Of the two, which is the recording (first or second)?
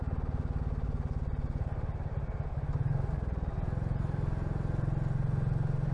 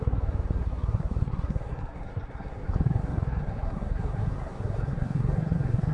first